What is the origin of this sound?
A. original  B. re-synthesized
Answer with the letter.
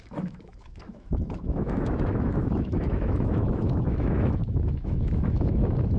B